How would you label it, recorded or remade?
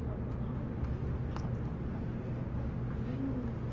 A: recorded